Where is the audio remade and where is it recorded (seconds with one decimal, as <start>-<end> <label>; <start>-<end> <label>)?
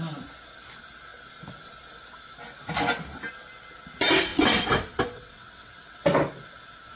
0.0-4.3 recorded; 4.3-5.9 remade; 5.9-7.0 recorded